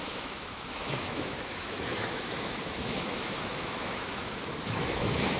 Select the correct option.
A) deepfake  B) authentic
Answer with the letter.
A